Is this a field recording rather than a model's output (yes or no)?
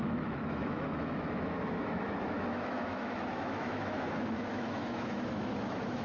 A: no